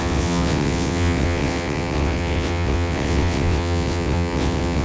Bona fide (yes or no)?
no